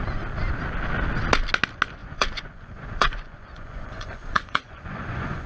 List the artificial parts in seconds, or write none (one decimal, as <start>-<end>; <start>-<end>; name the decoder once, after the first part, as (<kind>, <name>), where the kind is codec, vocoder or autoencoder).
2.0-5.5 (vocoder, Vocos)